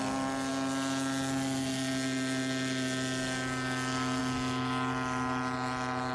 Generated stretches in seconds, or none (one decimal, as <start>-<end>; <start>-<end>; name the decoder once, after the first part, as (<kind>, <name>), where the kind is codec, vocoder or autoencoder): none